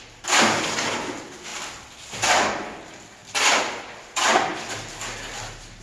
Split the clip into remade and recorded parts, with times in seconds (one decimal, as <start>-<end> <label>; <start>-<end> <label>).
0.0-5.8 recorded

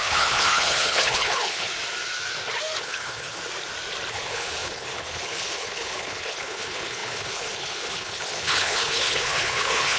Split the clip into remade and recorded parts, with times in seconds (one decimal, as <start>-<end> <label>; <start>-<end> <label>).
0.0-1.7 remade; 1.7-2.8 recorded; 2.8-3.4 remade; 3.4-4.1 recorded; 4.1-10.0 remade

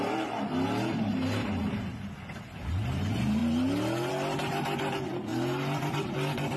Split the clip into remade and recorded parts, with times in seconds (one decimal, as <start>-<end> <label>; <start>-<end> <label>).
0.0-6.6 recorded

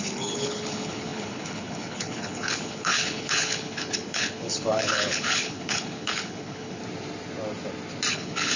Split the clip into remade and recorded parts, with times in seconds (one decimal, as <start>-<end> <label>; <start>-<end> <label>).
0.0-6.8 remade; 6.8-8.1 recorded; 8.1-8.6 remade

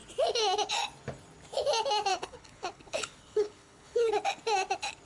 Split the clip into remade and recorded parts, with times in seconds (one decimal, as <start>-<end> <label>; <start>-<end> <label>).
0.0-2.1 recorded; 2.1-4.1 remade; 4.1-5.1 recorded

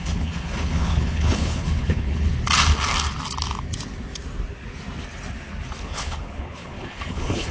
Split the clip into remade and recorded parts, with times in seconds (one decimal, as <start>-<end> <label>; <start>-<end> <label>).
0.0-2.3 remade; 2.3-5.8 recorded; 5.8-7.5 remade